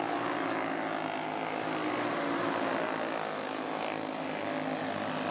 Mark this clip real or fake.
real